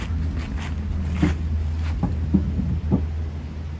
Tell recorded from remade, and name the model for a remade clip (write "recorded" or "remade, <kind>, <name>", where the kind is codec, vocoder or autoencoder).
recorded